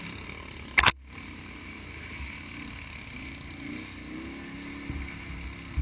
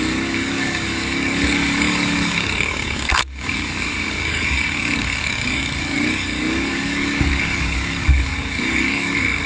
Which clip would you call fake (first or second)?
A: second